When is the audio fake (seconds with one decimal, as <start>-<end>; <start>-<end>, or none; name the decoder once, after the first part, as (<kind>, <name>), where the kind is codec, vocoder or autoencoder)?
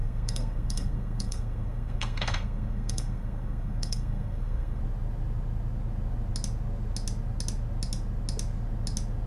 0.0-4.8 (codec, SNAC)